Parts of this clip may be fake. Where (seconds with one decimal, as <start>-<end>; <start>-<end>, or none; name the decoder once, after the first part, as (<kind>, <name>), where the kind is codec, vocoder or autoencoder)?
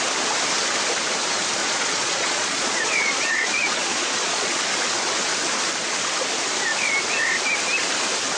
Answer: 1.6-4.7 (vocoder, Vocos)